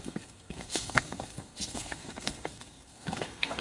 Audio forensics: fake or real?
fake